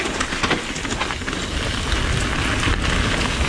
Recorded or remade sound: recorded